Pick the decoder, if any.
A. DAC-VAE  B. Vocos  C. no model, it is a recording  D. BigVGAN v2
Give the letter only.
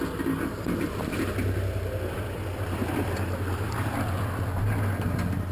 C